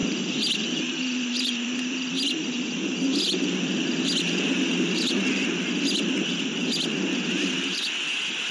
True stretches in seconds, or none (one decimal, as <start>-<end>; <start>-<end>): 4.0-8.5